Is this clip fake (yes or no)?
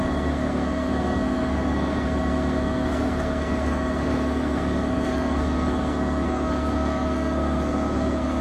yes